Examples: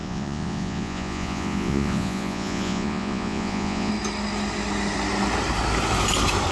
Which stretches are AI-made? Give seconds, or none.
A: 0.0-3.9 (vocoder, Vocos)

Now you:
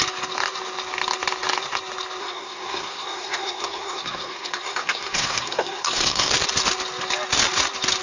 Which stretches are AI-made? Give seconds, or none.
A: 2.2-6.3 (codec, SNAC)

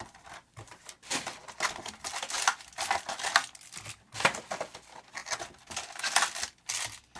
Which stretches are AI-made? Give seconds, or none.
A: none

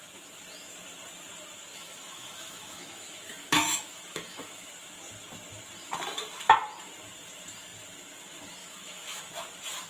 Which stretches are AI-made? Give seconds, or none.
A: 1.7-4.7 (autoencoder, DAC-VAE); 8.6-9.3

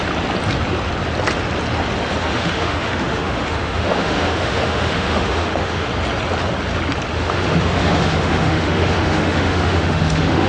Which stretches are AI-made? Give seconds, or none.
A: 2.2-5.9 (autoencoder, DAC-VAE); 7.1-10.5

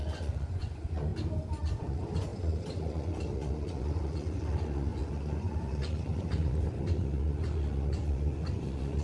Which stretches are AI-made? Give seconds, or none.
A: 0.0-1.1 (vocoder, Vocos); 1.6-9.0

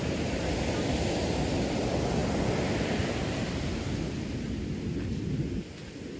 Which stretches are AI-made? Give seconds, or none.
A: none